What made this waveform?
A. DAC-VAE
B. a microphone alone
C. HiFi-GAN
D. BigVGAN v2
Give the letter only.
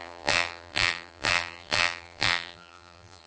D